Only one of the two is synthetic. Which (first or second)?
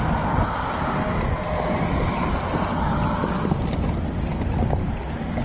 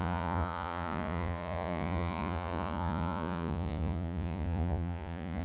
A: second